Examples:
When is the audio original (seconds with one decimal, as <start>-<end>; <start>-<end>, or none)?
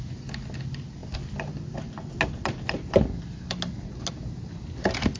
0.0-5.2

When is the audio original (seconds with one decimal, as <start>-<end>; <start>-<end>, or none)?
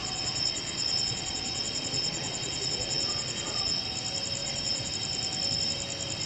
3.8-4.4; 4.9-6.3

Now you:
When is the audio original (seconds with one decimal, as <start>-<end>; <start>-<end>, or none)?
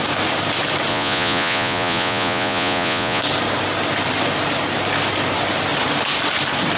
0.0-0.9; 3.2-6.8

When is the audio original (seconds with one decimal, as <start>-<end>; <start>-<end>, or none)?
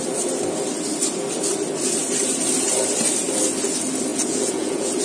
0.0-4.1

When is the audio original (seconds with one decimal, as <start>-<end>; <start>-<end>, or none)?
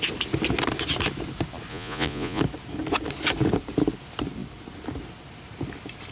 0.0-1.7; 2.4-6.1